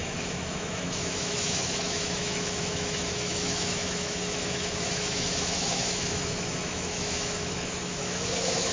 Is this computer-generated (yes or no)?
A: yes